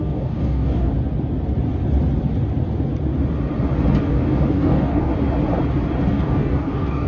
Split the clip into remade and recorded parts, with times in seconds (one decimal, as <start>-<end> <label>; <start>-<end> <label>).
0.0-0.9 remade; 0.9-4.0 recorded; 4.0-5.1 remade; 5.1-6.1 recorded; 6.1-7.1 remade